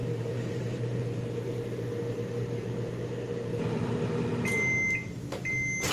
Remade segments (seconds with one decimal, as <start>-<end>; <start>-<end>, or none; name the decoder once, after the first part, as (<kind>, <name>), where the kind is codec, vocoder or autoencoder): 0.0-1.0 (vocoder, BigVGAN v2)